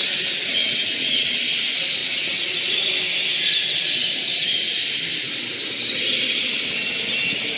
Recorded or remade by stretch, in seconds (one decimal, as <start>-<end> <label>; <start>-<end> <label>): 0.0-1.4 remade; 1.4-2.0 recorded; 2.0-2.9 remade; 2.9-7.6 recorded